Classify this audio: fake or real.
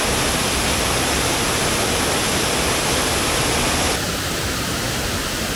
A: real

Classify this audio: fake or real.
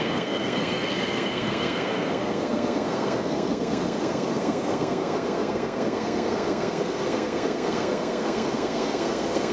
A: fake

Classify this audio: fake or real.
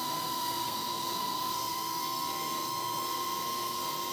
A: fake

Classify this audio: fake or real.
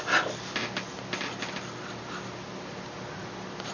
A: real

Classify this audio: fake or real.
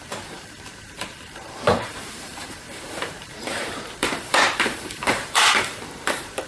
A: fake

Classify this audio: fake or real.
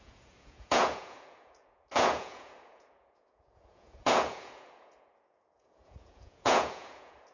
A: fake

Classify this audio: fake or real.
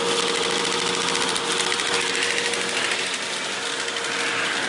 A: real